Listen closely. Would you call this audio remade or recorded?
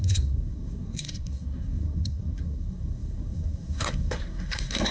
remade